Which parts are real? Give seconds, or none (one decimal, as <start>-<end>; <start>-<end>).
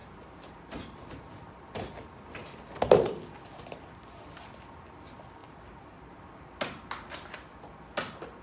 1.2-5.4; 6.2-8.4